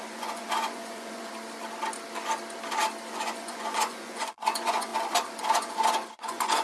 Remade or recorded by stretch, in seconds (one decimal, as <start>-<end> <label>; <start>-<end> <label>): 0.0-1.3 remade; 1.3-3.1 recorded; 3.1-4.9 remade; 4.9-5.4 recorded; 5.4-6.6 remade